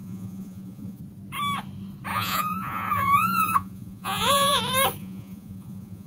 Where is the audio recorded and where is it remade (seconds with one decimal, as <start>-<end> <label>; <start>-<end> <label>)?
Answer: 0.0-1.0 remade; 1.0-2.1 recorded; 2.1-4.6 remade; 4.6-5.0 recorded; 5.0-6.1 remade